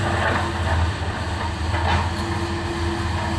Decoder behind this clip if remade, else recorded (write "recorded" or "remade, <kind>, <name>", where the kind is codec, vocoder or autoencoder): recorded